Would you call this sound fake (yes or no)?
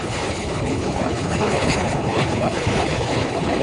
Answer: yes